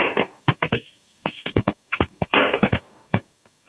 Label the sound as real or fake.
fake